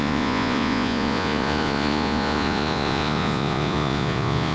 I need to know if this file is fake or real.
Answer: fake